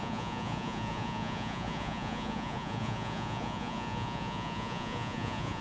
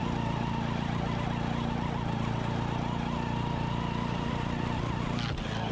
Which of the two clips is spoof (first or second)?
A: first